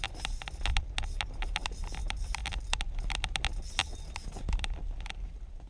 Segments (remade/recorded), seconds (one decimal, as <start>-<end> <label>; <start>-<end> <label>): 0.0-5.7 recorded